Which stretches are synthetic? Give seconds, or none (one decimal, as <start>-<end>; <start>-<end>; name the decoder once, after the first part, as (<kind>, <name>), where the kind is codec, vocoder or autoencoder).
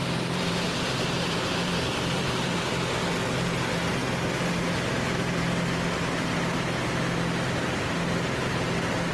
0.0-2.8 (vocoder, BigVGAN v2)